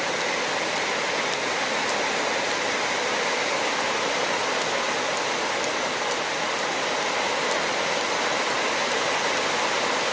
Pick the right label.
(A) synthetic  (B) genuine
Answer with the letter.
B